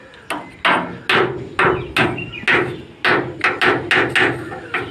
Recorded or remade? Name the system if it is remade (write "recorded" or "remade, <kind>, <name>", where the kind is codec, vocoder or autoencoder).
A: recorded